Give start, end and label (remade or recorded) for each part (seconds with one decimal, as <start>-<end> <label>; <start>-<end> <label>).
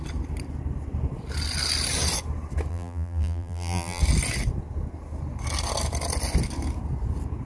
0.0-2.7 recorded; 2.7-4.0 remade; 4.0-7.5 recorded